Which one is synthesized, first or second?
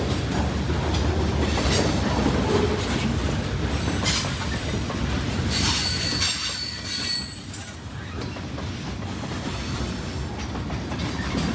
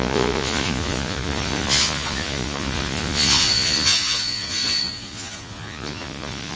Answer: second